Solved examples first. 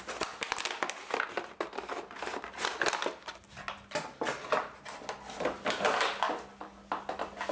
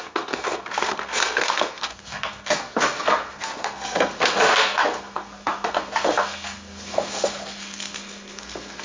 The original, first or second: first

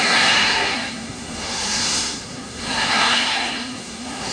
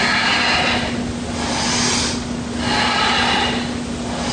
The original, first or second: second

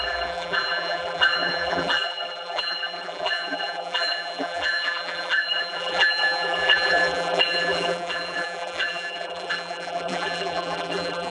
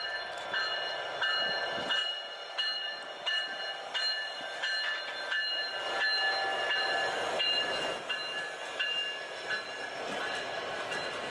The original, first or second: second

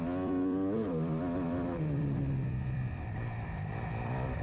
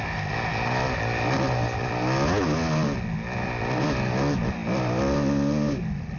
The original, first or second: second